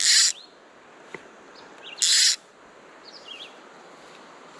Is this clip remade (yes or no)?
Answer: no